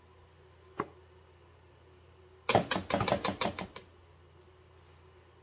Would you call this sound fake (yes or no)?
no